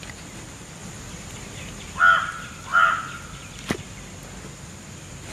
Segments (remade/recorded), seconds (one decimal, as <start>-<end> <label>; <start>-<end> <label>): 0.0-5.3 recorded